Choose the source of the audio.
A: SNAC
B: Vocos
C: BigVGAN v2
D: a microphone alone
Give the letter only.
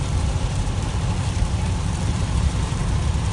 C